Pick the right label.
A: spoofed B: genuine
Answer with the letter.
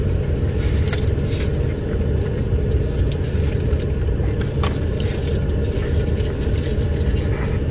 B